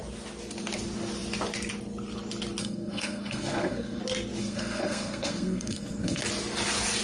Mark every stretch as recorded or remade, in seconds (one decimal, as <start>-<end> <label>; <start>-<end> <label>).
0.0-2.6 recorded; 2.6-4.0 remade; 4.0-4.4 recorded; 4.4-6.2 remade; 6.2-7.0 recorded